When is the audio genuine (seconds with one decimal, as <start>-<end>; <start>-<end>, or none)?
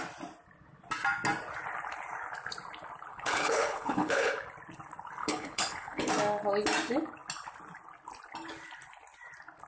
0.0-3.1; 4.3-5.2; 6.1-9.7